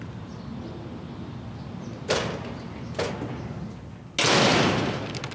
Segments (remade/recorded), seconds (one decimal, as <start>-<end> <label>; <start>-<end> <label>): 0.0-5.3 recorded